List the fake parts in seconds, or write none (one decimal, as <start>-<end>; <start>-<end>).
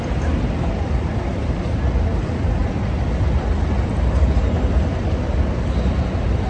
none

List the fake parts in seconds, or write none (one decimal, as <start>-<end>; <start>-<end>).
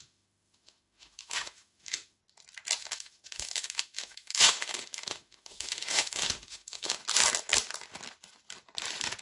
0.0-2.2; 2.8-7.0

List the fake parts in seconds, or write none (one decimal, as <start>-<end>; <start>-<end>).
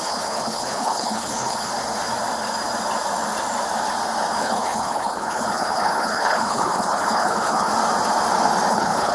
0.0-1.7; 4.3-7.7; 8.7-9.1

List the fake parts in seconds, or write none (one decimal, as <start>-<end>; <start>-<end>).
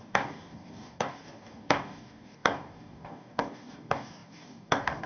0.0-5.1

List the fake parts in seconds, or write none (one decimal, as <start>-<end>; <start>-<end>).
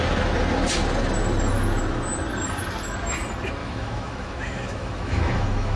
3.6-5.8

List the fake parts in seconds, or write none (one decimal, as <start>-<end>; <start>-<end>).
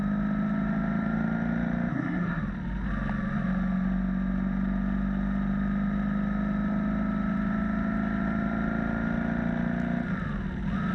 1.9-2.4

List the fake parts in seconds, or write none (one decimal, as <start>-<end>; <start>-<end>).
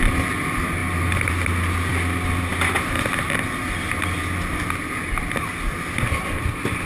none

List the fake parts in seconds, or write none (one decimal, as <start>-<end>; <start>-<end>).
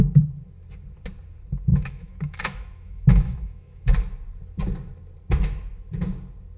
1.7-3.9